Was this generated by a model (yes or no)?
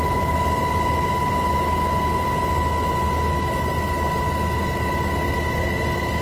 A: no